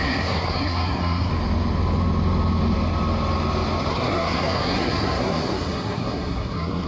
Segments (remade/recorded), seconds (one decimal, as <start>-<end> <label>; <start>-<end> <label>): 0.0-1.3 remade; 1.3-3.9 recorded; 3.9-6.9 remade